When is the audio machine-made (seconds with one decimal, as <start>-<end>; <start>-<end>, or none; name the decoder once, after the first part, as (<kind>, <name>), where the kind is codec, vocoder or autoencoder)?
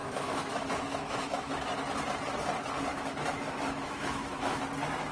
0.0-1.5 (autoencoder, DAC-VAE); 2.9-4.6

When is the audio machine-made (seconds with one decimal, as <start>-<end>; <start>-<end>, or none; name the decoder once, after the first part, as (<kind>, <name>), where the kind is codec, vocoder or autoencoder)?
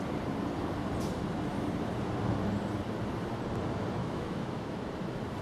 4.0-4.8 (autoencoder, DAC-VAE)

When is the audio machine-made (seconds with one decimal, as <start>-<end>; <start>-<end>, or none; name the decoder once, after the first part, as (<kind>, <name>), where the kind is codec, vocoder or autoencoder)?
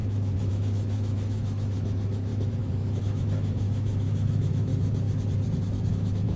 0.0-4.7 (autoencoder, DAC-VAE); 5.9-6.4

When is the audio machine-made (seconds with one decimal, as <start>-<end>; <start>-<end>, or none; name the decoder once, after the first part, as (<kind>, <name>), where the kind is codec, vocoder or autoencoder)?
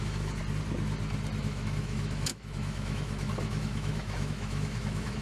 0.0-0.4 (autoencoder, DAC-VAE); 1.4-5.2